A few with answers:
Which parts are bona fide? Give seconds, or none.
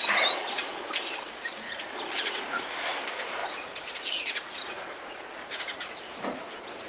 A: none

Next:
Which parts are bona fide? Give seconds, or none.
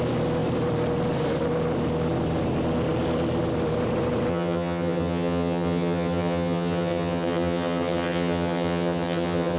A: 0.0-4.3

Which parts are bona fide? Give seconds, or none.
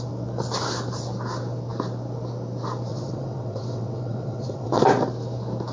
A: 0.0-2.9; 4.8-5.7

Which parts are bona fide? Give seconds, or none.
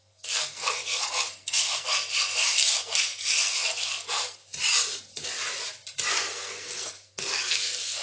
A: 4.4-6.1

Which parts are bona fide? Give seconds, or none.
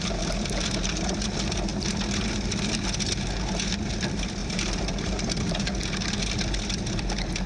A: 0.0-4.4; 5.8-7.5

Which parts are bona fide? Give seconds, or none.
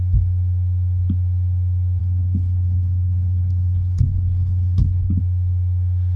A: 0.0-2.0; 5.2-6.2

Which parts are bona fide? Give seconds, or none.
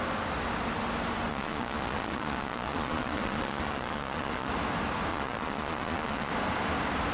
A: 0.0-1.3; 4.5-5.1; 6.3-7.1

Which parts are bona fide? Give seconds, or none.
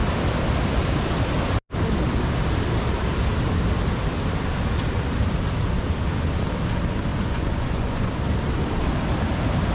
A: 0.0-7.1; 8.1-9.7